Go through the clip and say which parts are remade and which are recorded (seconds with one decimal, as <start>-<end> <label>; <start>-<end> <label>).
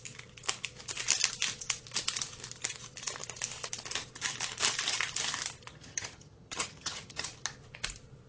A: 0.0-5.7 recorded; 5.7-7.3 remade; 7.3-8.3 recorded